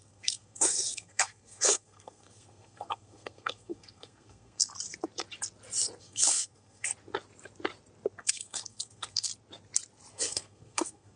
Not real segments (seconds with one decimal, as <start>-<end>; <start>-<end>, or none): 0.0-4.7; 6.0-6.9; 8.2-9.3; 10.1-11.2